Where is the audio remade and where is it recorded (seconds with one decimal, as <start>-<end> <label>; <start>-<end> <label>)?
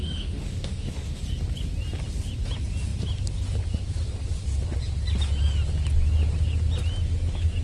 0.0-1.2 remade; 1.2-7.6 recorded